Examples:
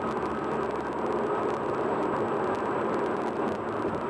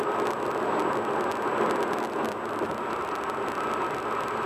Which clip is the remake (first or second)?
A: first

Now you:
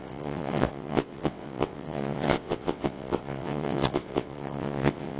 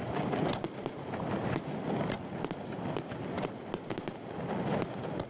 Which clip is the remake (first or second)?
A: first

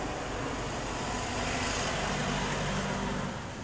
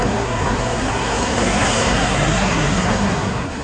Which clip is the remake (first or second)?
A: second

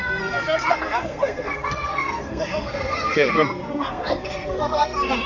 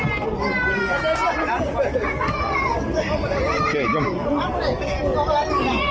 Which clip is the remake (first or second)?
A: first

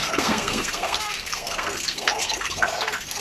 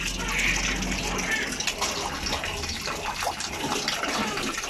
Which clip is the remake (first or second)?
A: first